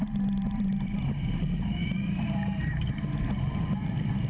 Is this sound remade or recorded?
remade